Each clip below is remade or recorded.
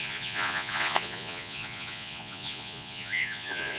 remade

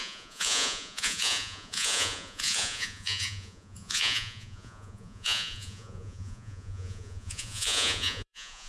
remade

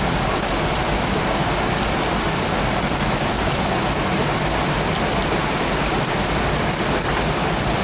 recorded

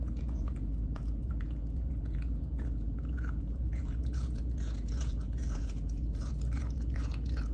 remade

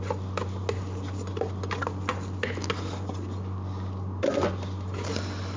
recorded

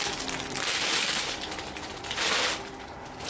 recorded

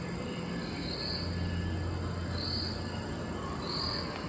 recorded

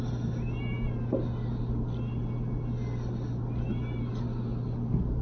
recorded